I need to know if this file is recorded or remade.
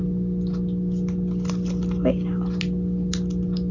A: recorded